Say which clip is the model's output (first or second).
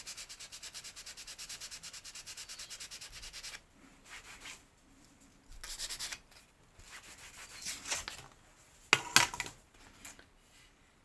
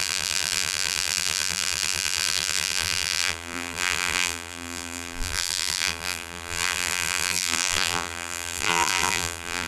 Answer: second